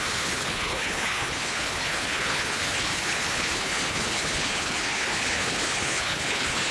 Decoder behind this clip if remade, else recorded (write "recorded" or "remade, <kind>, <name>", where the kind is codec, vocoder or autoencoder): remade, codec, HILCodec